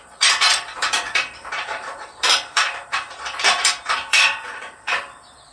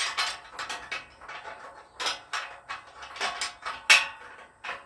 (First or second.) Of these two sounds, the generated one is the first